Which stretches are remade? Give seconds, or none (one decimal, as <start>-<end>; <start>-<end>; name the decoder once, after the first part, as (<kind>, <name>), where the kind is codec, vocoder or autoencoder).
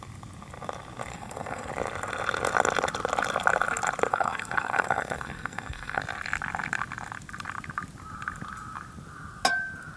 1.1-1.7 (codec, SNAC); 4.1-6.0